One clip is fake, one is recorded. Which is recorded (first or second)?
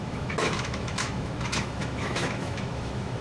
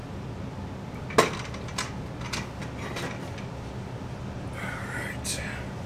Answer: second